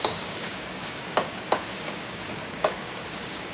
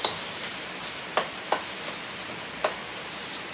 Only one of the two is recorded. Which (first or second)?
second